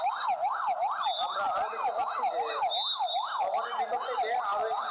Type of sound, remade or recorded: recorded